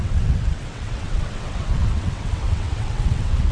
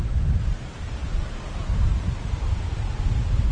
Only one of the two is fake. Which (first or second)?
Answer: first